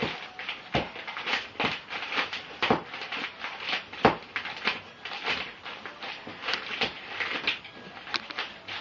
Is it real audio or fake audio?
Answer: real